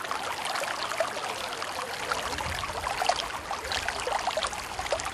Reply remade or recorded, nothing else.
recorded